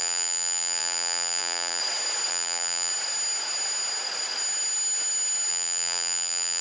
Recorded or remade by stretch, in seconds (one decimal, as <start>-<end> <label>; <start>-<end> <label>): 0.0-1.8 remade; 1.8-2.3 recorded; 2.3-2.9 remade; 2.9-5.5 recorded; 5.5-6.6 remade